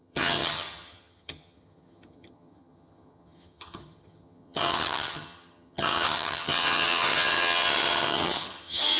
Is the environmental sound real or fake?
fake